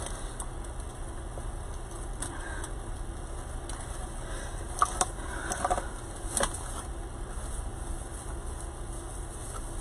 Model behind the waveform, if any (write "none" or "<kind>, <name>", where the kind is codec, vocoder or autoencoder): none